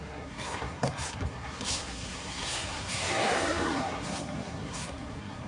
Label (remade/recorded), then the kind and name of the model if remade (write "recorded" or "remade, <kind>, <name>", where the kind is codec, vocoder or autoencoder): remade, codec, SNAC